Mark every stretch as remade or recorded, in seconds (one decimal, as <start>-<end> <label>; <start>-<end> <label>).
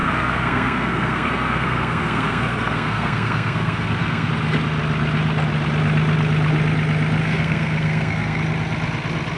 0.0-4.3 remade; 4.3-7.2 recorded; 7.2-8.4 remade; 8.4-9.4 recorded